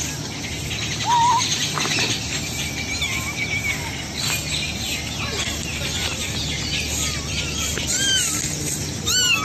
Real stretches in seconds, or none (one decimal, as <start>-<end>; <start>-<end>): 0.0-9.4